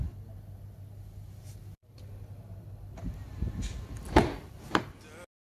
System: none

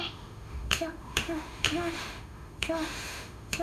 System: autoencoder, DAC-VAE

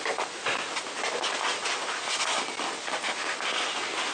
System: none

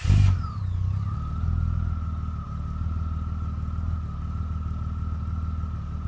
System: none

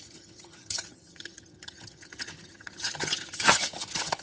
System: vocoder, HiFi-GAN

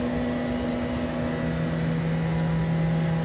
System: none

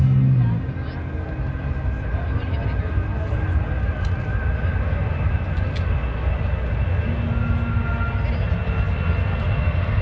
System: none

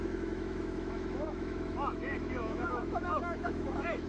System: autoencoder, DAC-VAE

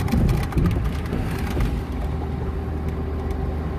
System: none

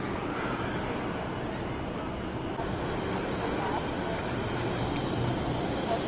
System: none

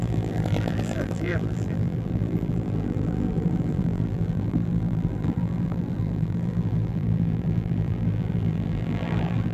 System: vocoder, BigVGAN v2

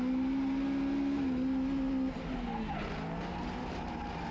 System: none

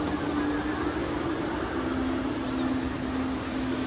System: none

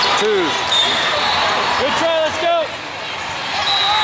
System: none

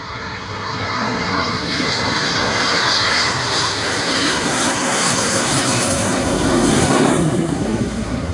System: codec, SNAC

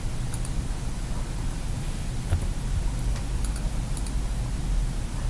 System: none